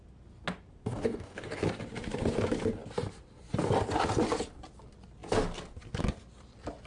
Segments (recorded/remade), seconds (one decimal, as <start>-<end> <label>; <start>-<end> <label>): 0.0-0.9 recorded; 0.9-1.6 remade; 1.6-6.9 recorded